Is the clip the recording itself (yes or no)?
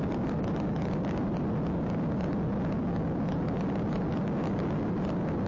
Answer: yes